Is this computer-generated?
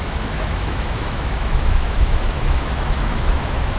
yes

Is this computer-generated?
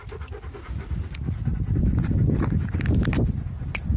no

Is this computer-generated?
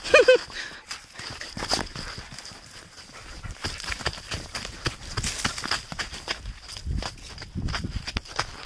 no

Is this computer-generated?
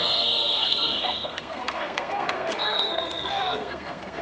yes